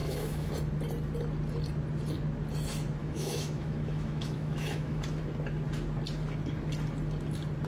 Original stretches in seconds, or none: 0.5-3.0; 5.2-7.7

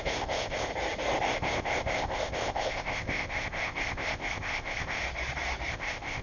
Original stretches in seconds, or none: 0.7-1.2; 5.0-5.7

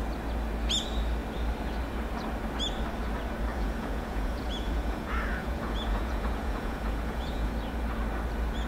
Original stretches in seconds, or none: 0.0-3.5; 7.5-8.7

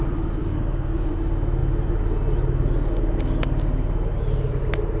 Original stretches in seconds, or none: 0.0-0.4; 1.1-5.0

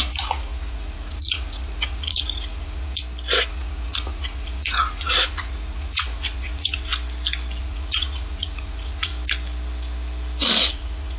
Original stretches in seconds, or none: 3.0-3.5; 6.9-7.6; 9.1-10.7

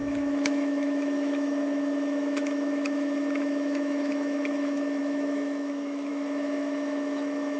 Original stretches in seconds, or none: none